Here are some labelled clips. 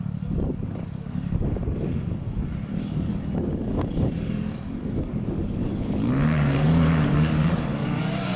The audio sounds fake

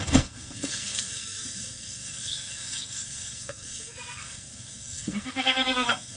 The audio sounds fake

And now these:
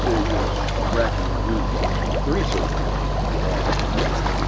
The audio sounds real